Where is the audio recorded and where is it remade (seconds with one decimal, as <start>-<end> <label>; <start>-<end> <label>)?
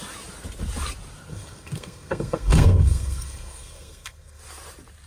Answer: 0.0-1.3 recorded; 1.3-4.4 remade; 4.4-5.1 recorded